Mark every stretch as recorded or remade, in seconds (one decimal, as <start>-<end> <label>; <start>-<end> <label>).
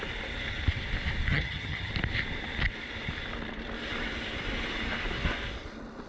0.0-1.3 recorded; 1.3-1.9 remade; 1.9-6.1 recorded